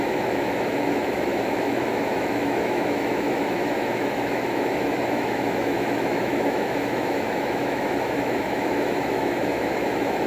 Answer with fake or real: fake